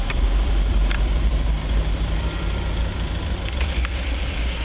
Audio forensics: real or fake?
fake